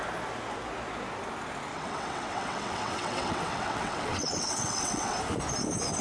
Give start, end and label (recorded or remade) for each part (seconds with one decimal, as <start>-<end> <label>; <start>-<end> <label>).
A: 0.0-1.7 recorded; 1.7-5.2 remade; 5.2-6.0 recorded